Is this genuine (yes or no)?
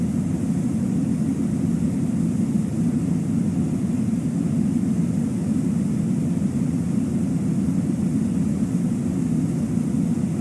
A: no